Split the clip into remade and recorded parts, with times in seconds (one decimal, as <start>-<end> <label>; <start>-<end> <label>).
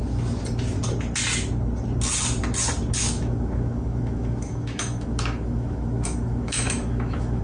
0.0-3.0 recorded; 3.0-7.4 remade